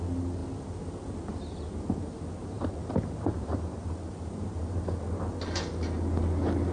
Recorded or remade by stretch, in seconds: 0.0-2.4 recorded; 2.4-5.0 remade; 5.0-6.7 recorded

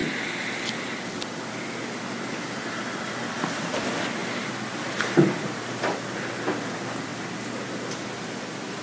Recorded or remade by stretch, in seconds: 0.0-4.2 recorded; 4.2-5.8 remade; 5.8-8.8 recorded

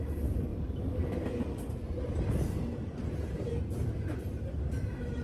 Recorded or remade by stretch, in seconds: 0.0-5.2 recorded

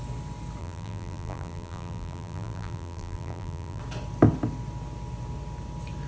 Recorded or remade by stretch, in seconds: 0.0-0.6 recorded; 0.6-3.8 remade; 3.8-6.1 recorded

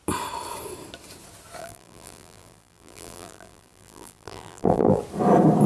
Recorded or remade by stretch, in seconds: 0.0-1.6 recorded; 1.6-5.0 remade; 5.0-5.7 recorded

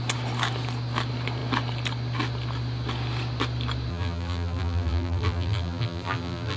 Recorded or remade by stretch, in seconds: 0.0-3.9 recorded; 3.9-6.6 remade

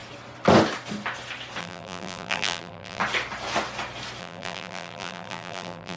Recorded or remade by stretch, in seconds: 0.0-1.6 recorded; 1.6-3.0 remade; 3.0-4.2 recorded; 4.2-6.0 remade